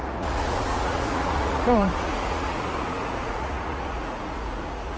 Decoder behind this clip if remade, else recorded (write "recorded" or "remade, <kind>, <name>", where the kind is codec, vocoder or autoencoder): remade, vocoder, Vocos